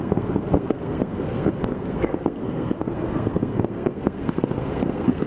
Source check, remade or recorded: remade